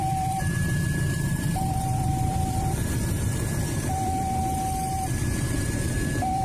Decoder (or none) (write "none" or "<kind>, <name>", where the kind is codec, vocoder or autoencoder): vocoder, BigVGAN v2